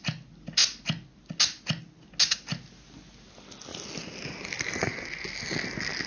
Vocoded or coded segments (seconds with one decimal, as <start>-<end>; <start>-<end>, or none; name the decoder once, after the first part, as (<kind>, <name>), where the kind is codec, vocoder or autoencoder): none